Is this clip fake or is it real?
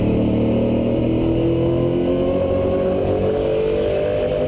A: real